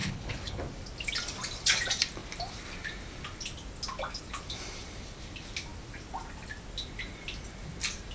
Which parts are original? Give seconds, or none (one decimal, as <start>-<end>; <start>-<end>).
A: 0.6-8.1